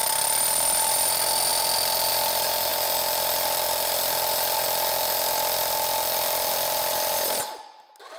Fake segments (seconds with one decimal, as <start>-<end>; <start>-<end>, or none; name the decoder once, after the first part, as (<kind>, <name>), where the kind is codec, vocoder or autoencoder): none